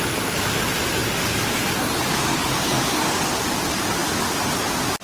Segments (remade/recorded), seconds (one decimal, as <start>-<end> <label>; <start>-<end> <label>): 0.0-1.0 recorded; 1.0-1.6 remade; 1.6-2.3 recorded; 2.3-3.2 remade; 3.2-5.0 recorded